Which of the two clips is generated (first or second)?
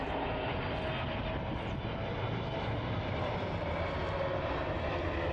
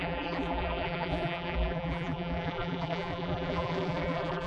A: second